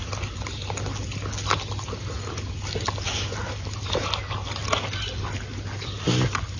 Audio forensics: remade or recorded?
recorded